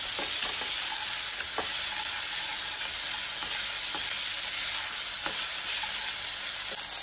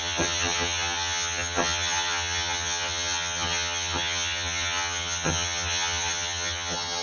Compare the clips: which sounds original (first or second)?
first